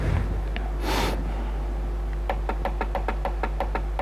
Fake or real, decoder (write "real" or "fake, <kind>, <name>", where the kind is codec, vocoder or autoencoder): real